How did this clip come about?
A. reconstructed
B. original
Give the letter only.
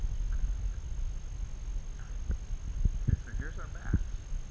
B